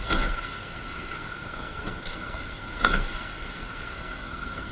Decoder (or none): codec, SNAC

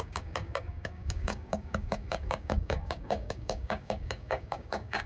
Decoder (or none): codec, DAC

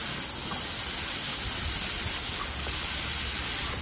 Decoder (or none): none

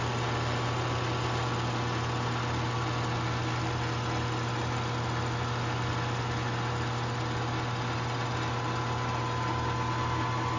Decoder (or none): none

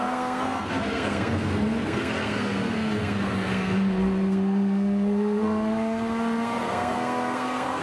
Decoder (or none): codec, SNAC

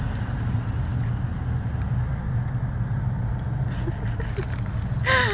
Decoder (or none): none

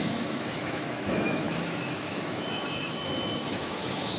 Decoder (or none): autoencoder, DAC-VAE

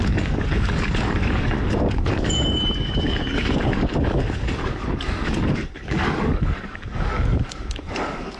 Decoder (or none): codec, DAC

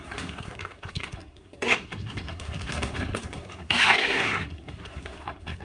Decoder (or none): codec, SNAC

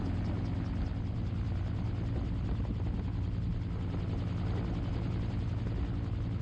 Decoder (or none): none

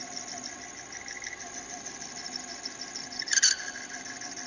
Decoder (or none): none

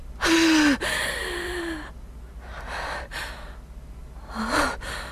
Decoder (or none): none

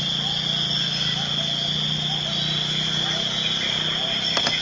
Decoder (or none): none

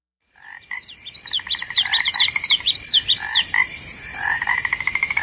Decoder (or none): vocoder, BigVGAN v2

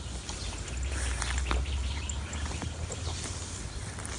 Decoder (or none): none